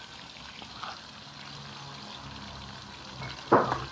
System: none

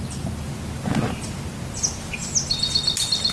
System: none